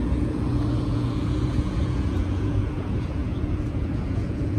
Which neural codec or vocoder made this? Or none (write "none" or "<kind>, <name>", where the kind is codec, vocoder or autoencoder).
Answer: vocoder, Vocos